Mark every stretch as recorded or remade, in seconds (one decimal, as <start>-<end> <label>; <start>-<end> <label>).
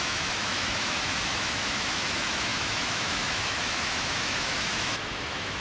0.0-5.6 remade